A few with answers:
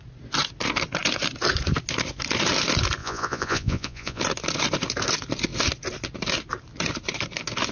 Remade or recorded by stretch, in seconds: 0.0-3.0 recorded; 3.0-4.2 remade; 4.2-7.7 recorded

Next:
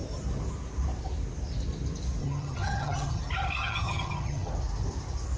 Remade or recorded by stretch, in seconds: 0.0-2.2 recorded; 2.2-3.2 remade; 3.2-3.6 recorded; 3.6-4.5 remade; 4.5-5.4 recorded

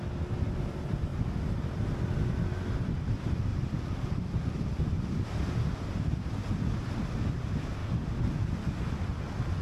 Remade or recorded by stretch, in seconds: 0.0-3.5 recorded; 3.5-6.6 remade; 6.6-9.6 recorded